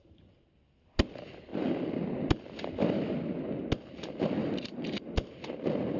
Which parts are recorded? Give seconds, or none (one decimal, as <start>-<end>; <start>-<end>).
0.0-4.4; 5.4-6.0